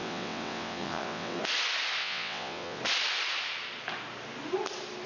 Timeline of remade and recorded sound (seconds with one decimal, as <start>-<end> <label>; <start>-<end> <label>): 0.0-1.4 remade; 1.4-2.0 recorded; 2.0-2.8 remade; 2.8-5.1 recorded